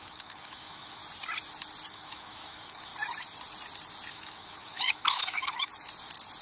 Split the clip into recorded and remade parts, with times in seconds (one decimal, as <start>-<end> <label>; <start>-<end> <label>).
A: 0.0-1.0 remade; 1.0-1.9 recorded; 1.9-2.9 remade; 2.9-4.1 recorded; 4.1-5.7 remade; 5.7-6.4 recorded